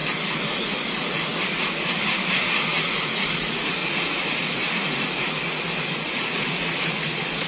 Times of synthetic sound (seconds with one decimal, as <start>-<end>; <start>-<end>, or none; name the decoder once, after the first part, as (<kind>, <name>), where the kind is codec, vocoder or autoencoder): 0.6-7.5 (vocoder, Vocos)